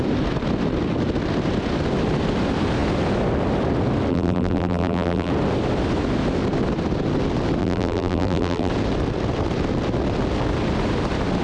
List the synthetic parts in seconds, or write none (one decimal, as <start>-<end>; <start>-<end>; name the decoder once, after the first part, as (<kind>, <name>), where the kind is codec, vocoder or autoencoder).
4.1-5.3 (vocoder, BigVGAN v2); 7.6-8.7